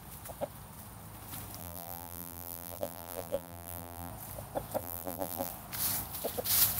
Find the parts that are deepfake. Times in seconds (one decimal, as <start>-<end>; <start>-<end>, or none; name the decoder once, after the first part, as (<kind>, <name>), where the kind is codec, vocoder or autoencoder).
1.6-4.1 (vocoder, BigVGAN v2); 4.8-5.5